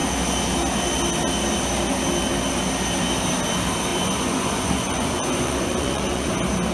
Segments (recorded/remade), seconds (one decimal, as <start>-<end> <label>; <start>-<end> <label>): 0.0-3.9 recorded; 3.9-6.3 remade; 6.3-6.7 recorded